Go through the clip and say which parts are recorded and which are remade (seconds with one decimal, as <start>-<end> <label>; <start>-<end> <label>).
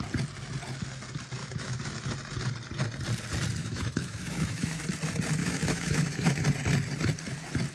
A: 0.0-1.4 recorded; 1.4-2.1 remade; 2.1-3.6 recorded; 3.6-4.8 remade; 4.8-5.4 recorded; 5.4-6.4 remade; 6.4-7.7 recorded